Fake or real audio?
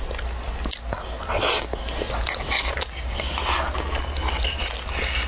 real